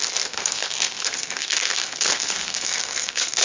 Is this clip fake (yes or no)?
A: yes